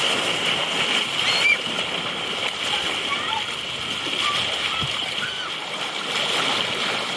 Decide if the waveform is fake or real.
real